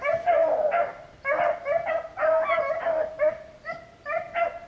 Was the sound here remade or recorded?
recorded